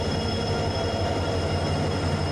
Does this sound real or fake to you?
real